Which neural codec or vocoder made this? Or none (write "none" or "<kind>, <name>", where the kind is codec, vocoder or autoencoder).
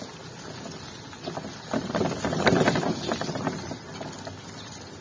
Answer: none